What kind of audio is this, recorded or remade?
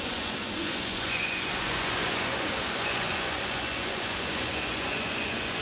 remade